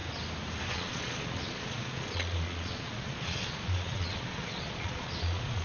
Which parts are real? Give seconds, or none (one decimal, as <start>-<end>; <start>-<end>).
0.0-0.7

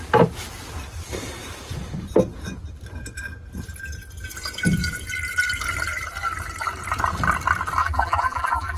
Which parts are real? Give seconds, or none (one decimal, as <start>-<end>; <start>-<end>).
0.0-7.8

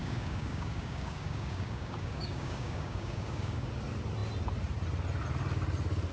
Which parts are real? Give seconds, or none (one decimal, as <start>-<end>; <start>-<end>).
3.7-6.1

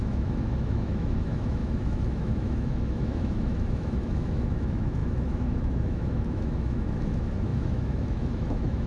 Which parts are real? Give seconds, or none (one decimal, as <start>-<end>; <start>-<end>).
none

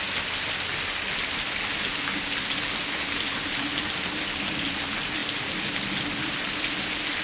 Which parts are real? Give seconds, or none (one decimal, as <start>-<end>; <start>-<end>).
0.0-7.2

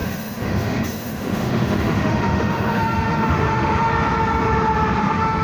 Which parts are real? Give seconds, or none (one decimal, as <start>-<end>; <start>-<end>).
3.9-5.0

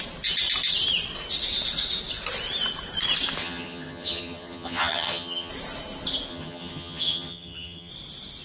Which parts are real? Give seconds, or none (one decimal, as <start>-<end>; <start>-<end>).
0.0-3.4; 5.5-6.3; 7.9-8.4

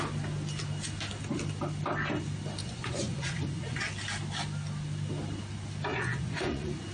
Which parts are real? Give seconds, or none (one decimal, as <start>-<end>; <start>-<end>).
0.0-2.6; 3.9-5.9